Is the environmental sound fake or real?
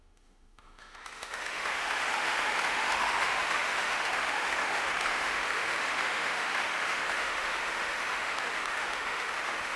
fake